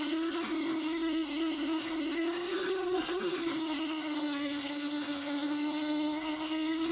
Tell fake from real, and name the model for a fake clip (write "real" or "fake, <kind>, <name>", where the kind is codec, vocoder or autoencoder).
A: fake, codec, SNAC